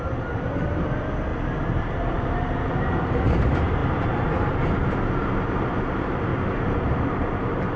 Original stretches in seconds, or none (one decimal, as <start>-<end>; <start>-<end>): 1.3-1.8; 3.8-5.5; 6.3-7.1